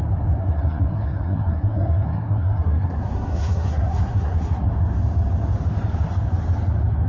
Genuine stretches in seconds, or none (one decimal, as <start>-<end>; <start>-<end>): 0.0-0.4; 4.7-7.1